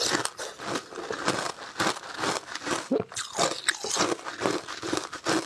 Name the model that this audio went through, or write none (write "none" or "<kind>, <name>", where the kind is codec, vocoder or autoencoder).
none